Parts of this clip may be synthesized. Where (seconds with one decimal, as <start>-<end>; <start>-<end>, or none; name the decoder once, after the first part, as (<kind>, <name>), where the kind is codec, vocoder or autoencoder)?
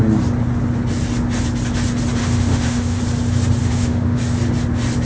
2.2-3.0 (autoencoder, DAC-VAE); 3.6-4.2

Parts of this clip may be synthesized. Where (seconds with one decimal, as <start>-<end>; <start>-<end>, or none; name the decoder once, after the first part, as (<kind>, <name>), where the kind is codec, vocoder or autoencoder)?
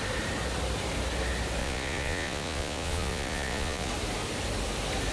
1.6-3.9 (vocoder, Vocos)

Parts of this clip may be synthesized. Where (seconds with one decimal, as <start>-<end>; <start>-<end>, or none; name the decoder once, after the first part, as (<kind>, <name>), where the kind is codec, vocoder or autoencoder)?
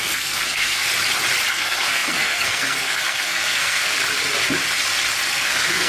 0.0-0.9 (codec, SNAC); 1.5-4.0; 5.3-5.9